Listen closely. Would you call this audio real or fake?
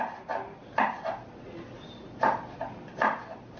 real